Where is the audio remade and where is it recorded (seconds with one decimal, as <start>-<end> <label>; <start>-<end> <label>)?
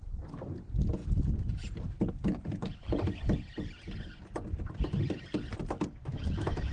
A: 0.0-6.0 recorded; 6.0-6.7 remade